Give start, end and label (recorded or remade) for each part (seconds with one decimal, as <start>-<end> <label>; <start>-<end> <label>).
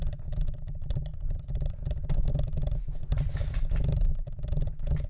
0.0-5.1 recorded